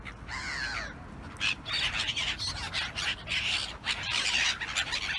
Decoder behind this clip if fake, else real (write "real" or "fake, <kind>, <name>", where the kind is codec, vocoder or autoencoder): real